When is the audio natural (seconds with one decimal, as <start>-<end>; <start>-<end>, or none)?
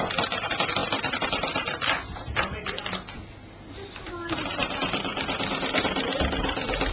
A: 0.0-6.9